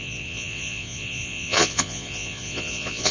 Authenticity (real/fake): fake